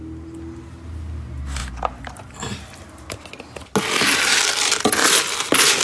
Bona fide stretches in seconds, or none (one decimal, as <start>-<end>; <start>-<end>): 0.0-1.6; 2.6-5.8